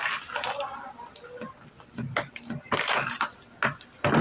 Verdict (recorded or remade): recorded